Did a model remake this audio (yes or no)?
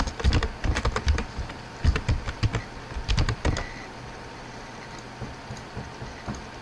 no